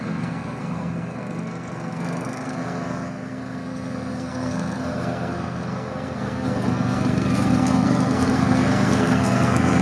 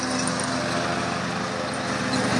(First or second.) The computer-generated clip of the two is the first